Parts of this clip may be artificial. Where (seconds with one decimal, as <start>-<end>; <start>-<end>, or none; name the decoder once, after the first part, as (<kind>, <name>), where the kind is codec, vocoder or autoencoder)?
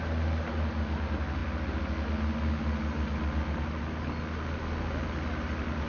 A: none